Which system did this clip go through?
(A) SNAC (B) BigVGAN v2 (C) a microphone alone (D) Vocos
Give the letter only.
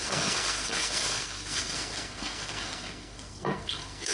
A